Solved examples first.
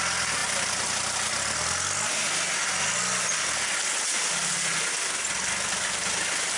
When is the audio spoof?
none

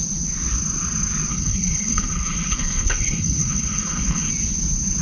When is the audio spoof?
1.3-4.3 (codec, HILCodec)

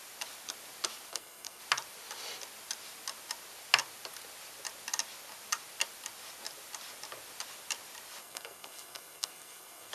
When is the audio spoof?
1.1-1.6 (codec, SNAC); 8.2-9.9

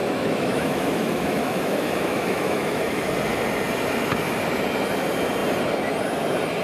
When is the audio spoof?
0.0-3.1 (autoencoder, DAC-VAE)